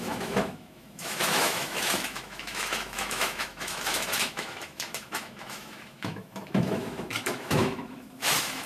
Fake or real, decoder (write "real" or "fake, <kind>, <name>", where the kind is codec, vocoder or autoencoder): fake, autoencoder, DAC-VAE